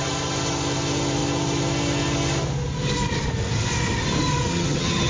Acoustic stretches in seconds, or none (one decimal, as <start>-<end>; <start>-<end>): 0.0-4.5